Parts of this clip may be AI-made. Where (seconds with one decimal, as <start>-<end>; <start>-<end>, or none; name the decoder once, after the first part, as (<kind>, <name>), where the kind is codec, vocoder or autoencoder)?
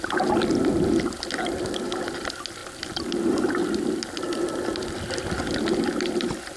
none